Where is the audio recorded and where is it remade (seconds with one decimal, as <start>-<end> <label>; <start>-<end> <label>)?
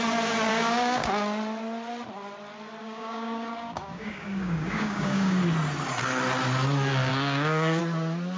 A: 0.0-0.5 recorded; 0.5-1.1 remade; 1.1-2.8 recorded; 2.8-5.4 remade; 5.4-7.1 recorded; 7.1-7.8 remade; 7.8-8.4 recorded